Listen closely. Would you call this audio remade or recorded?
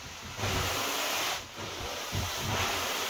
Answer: recorded